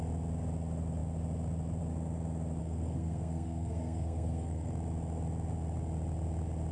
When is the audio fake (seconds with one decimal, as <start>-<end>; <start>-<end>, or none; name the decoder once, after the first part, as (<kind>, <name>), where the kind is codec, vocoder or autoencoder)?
2.6-4.7 (codec, SNAC)